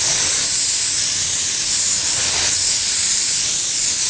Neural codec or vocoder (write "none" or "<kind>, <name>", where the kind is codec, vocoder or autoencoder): none